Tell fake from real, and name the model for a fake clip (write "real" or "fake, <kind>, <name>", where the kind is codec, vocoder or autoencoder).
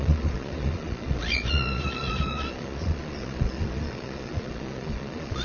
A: fake, vocoder, Vocos